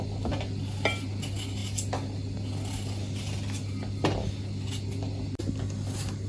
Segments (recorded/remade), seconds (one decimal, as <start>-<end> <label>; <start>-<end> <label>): 0.0-6.3 recorded